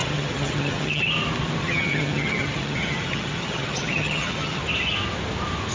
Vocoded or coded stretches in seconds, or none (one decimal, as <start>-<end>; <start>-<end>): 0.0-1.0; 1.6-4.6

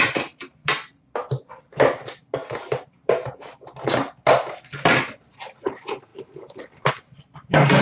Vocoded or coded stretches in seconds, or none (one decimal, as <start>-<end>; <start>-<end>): 0.0-0.6; 5.3-6.1; 6.9-7.8

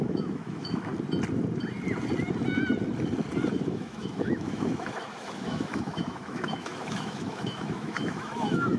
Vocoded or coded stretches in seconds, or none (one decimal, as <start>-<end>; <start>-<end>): 0.0-0.9; 3.5-8.8

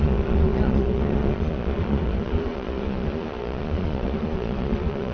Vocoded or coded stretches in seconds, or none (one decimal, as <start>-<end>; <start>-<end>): 0.0-5.1

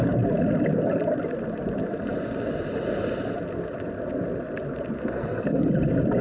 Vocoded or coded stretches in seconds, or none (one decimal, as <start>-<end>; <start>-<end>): 5.0-5.7